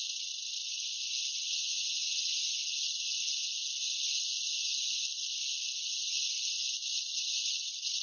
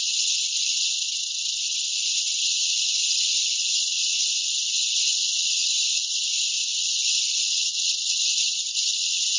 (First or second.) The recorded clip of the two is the first